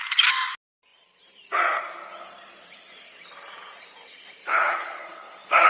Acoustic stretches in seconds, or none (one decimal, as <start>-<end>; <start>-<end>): 0.0-4.4